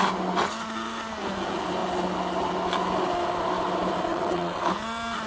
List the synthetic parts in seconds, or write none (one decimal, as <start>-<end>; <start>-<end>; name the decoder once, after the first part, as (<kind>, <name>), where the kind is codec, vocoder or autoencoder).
4.1-4.6 (vocoder, WaveNeXt)